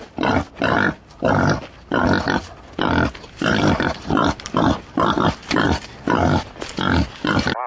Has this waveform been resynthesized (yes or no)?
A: no